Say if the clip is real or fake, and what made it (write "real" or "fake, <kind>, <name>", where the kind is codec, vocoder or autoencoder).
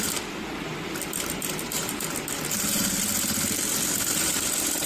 real